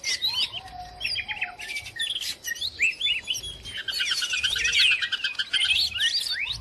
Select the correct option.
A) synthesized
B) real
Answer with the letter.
B